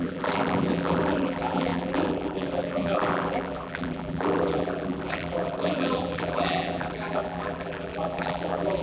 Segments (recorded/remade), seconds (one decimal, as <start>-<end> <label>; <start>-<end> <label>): 0.0-8.8 remade